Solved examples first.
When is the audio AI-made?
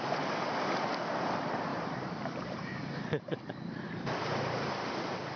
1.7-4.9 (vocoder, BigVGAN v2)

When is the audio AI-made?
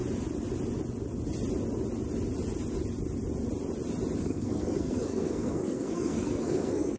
4.2-7.0 (codec, SNAC)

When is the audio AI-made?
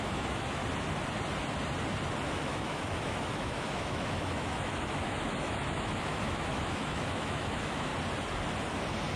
0.0-0.6 (autoencoder, DAC-VAE); 2.3-7.9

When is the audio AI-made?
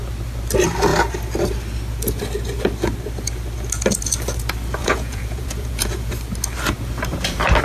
4.8-6.1 (vocoder, Vocos)